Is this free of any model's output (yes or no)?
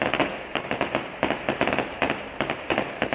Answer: yes